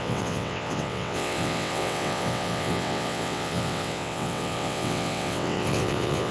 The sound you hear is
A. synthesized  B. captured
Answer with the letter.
A